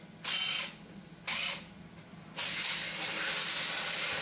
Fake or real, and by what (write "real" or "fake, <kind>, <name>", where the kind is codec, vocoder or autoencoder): fake, vocoder, BigVGAN v2